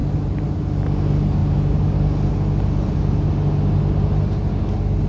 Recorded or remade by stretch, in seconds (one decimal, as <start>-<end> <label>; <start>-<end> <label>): 0.0-0.7 remade; 0.7-5.1 recorded